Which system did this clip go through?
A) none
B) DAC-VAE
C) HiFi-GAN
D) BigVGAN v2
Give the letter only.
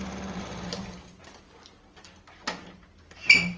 A